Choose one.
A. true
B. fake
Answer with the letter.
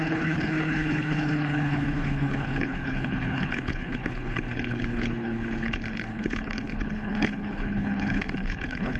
B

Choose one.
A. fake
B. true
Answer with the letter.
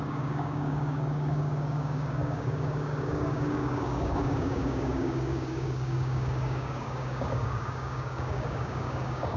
A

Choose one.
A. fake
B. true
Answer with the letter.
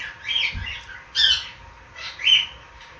B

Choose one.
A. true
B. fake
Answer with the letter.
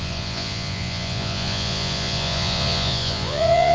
B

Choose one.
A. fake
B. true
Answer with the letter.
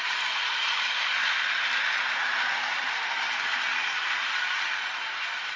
B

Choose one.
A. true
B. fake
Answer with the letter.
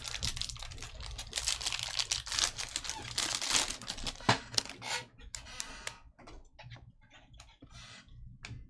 A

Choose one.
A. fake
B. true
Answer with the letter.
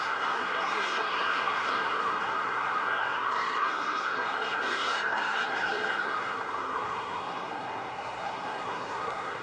A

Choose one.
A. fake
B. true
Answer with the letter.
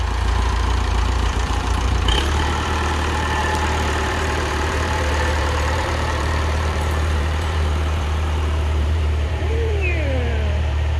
A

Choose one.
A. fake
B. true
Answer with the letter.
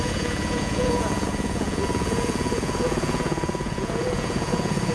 A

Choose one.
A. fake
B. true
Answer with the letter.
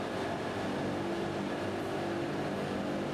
B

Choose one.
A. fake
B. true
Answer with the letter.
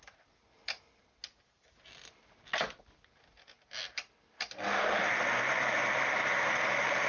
B